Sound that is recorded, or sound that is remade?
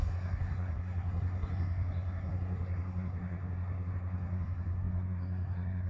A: remade